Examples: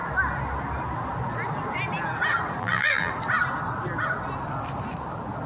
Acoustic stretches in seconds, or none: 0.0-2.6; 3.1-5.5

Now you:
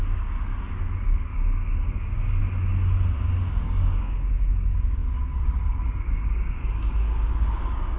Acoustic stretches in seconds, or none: 0.5-1.1; 2.4-3.2

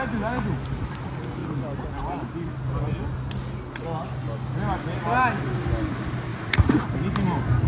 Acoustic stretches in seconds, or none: 0.0-6.3; 6.8-7.7